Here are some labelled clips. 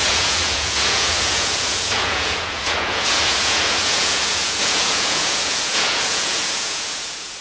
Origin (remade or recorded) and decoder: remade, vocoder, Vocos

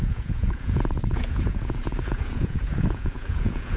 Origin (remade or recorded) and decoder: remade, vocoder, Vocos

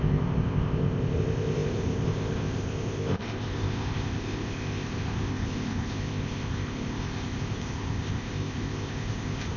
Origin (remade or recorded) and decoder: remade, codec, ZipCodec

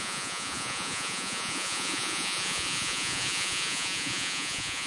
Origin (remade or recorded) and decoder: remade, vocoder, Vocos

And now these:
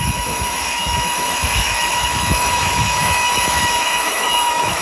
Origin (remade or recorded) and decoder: remade, autoencoder, DAC-VAE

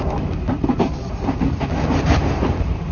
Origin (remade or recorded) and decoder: recorded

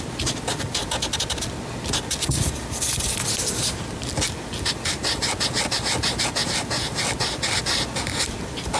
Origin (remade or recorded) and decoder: recorded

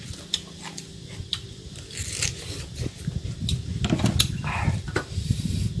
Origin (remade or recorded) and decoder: recorded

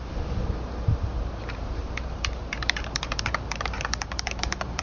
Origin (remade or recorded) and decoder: remade, vocoder, BigVGAN v2